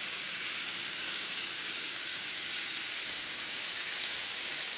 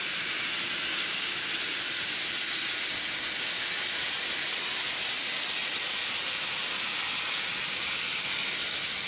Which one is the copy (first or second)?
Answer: first